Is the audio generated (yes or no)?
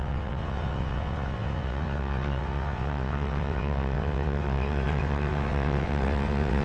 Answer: yes